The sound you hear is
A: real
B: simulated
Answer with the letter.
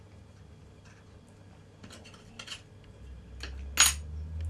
A